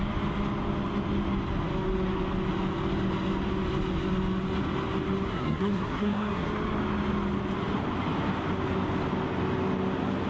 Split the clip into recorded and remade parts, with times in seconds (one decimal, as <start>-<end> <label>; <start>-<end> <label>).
0.0-5.3 recorded; 5.3-6.5 remade; 6.5-10.3 recorded

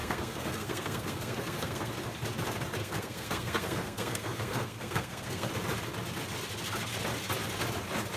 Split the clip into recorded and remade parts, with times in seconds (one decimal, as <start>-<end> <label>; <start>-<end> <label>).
0.0-1.9 remade; 1.9-2.8 recorded; 2.8-5.5 remade; 5.5-8.2 recorded

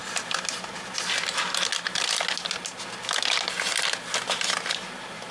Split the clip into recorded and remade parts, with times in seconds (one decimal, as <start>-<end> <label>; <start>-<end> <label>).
0.0-5.3 recorded

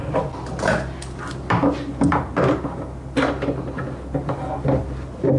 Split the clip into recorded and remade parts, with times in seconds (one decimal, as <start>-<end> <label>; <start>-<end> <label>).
0.0-5.4 recorded

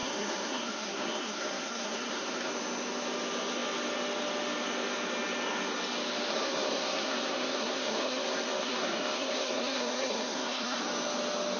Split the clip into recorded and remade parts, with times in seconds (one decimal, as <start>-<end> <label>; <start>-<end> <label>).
0.0-2.5 remade; 2.5-6.3 recorded; 6.3-10.8 remade; 10.8-11.6 recorded